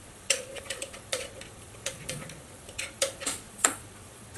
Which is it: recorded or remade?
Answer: remade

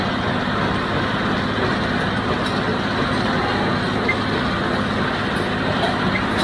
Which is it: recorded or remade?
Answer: recorded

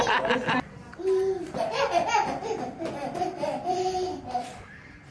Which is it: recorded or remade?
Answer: recorded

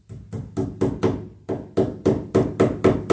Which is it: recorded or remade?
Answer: recorded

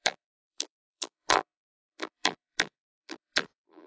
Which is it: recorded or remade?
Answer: remade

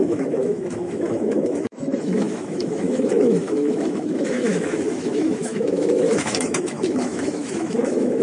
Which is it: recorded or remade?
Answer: remade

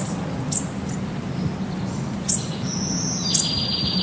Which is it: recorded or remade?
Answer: recorded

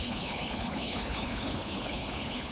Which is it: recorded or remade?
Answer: remade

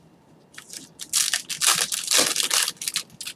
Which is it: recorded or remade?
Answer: recorded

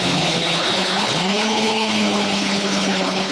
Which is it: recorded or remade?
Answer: remade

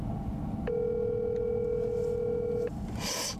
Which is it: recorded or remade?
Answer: recorded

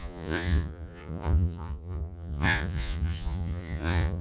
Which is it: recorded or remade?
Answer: remade